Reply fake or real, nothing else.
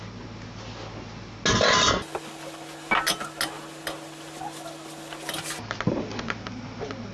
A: real